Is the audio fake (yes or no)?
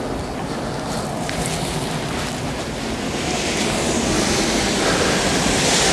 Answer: no